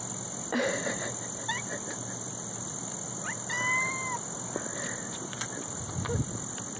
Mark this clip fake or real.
real